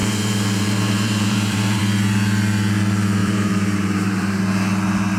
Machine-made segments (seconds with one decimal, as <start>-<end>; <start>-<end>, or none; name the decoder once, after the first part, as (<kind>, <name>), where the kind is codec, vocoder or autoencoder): 0.0-1.8 (vocoder, BigVGAN v2); 3.2-4.4